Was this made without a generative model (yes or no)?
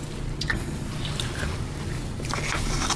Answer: yes